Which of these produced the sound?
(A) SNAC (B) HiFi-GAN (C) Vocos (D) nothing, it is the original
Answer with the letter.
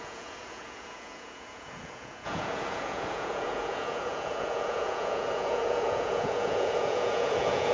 C